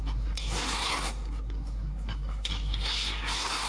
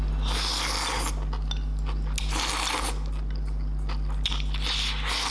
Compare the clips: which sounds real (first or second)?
second